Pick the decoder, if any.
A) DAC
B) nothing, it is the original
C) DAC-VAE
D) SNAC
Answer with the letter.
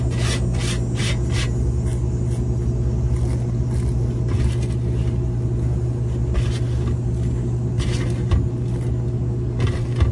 B